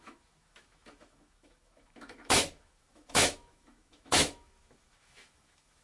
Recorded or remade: remade